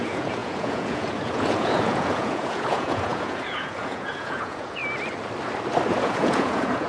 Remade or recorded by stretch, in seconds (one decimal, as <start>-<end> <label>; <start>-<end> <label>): 0.0-4.8 remade; 4.8-5.9 recorded; 5.9-6.9 remade